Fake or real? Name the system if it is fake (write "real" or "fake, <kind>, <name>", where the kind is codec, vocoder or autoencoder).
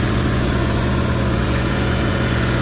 fake, vocoder, Vocos